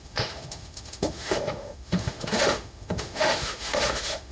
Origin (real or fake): fake